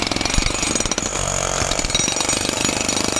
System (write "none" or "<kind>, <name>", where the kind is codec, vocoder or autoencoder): none